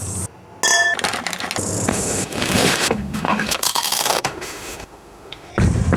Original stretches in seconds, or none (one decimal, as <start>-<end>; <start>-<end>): 0.0-1.9; 5.5-6.0

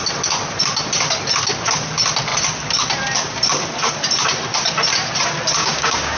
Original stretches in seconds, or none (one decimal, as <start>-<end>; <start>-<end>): 0.0-5.6

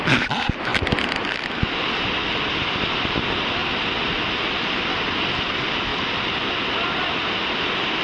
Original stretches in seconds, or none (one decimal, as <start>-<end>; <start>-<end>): 0.0-8.0

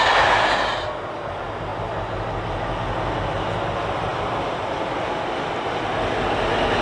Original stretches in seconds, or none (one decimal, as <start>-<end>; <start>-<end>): 0.0-6.8

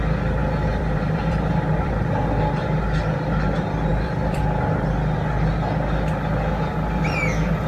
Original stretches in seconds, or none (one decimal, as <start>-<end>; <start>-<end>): 0.0-0.4; 2.1-3.9; 4.4-7.7

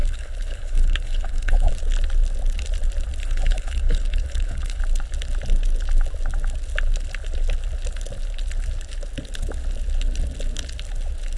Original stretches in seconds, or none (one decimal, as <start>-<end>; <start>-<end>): 1.7-3.2; 4.8-11.4

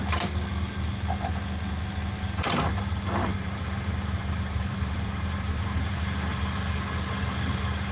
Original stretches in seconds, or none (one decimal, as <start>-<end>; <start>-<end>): 0.0-3.3; 6.4-7.9

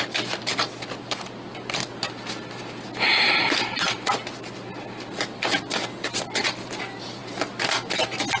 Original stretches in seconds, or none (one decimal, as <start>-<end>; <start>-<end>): 0.0-8.4